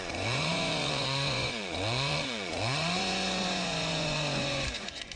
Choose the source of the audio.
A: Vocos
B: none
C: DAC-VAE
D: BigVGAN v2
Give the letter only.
A